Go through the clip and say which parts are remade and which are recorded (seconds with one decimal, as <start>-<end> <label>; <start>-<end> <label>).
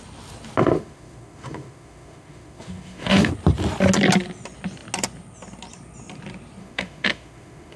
0.0-0.6 recorded; 0.6-3.3 remade; 3.3-6.6 recorded; 6.6-7.8 remade